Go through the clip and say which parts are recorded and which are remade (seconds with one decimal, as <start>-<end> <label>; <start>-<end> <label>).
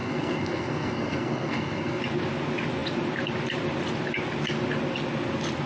0.0-2.0 remade; 2.0-5.7 recorded